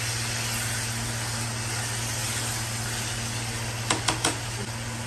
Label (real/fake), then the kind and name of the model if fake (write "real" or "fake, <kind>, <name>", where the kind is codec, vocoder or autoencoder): real